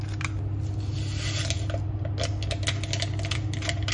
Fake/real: real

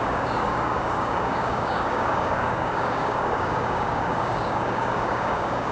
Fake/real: fake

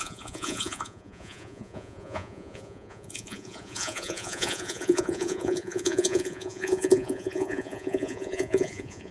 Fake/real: fake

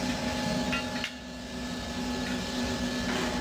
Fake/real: real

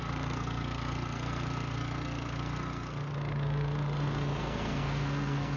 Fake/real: fake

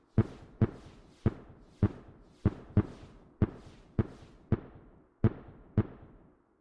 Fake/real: real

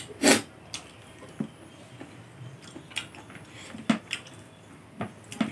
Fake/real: real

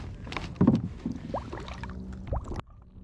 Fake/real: real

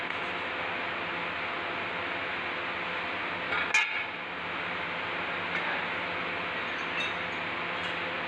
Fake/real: real